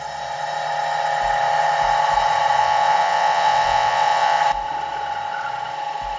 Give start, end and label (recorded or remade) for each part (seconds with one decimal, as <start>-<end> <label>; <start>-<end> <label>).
0.0-2.6 recorded; 2.6-4.4 remade; 4.4-6.2 recorded